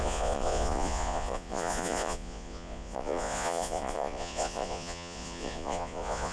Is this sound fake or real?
fake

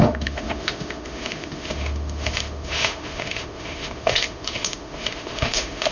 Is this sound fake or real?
fake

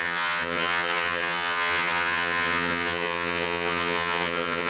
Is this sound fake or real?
fake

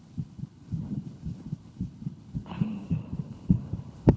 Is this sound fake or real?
fake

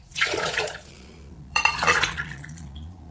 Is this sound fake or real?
fake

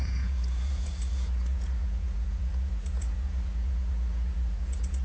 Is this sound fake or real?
fake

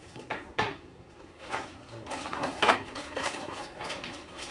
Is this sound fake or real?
fake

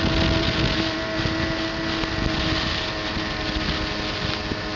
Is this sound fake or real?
real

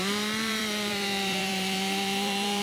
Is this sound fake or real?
fake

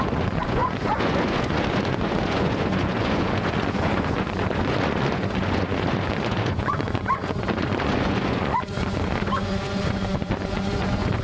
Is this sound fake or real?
fake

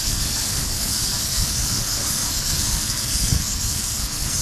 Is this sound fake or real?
fake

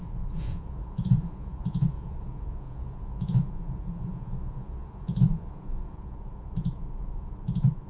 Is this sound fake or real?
fake